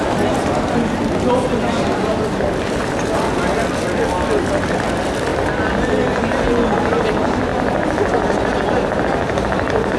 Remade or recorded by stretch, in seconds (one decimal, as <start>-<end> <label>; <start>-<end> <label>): 0.0-10.0 recorded